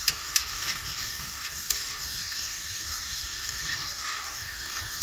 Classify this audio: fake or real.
fake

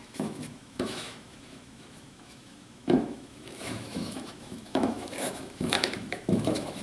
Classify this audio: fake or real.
fake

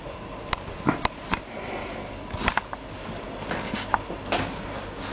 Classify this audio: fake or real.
real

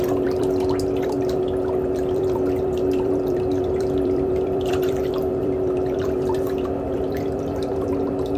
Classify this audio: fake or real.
fake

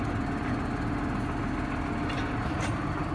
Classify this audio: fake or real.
real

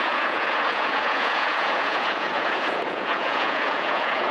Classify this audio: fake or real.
fake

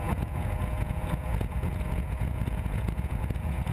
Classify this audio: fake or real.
fake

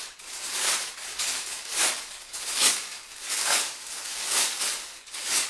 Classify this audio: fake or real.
fake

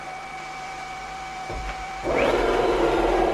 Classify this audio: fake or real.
fake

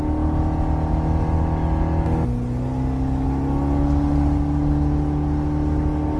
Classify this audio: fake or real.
real